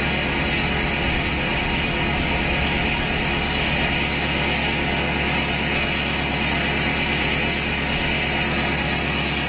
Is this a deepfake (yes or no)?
no